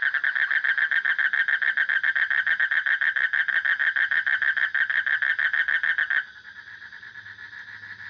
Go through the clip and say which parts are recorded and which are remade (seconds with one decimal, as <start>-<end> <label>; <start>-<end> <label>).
0.0-8.1 recorded